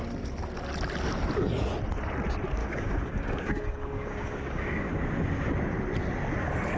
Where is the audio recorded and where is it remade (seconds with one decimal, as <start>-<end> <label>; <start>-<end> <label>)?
0.0-2.6 recorded; 2.6-4.9 remade; 4.9-6.8 recorded